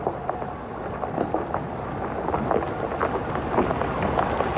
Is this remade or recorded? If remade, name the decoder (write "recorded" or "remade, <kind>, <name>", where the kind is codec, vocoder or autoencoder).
recorded